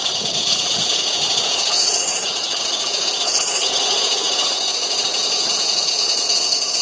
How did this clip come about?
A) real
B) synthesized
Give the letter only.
B